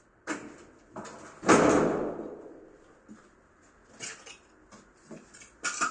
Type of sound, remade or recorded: recorded